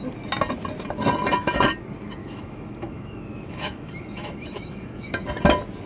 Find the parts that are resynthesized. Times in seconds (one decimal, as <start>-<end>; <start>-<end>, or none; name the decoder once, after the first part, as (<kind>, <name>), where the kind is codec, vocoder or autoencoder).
2.2-5.1 (autoencoder, DAC-VAE)